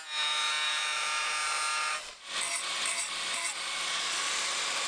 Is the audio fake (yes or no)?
no